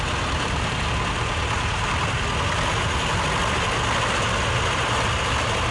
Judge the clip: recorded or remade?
recorded